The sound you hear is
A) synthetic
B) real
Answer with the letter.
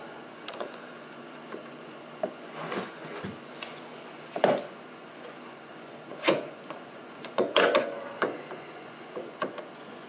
A